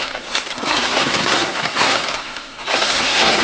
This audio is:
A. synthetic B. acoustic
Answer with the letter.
A